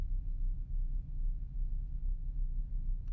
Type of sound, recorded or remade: recorded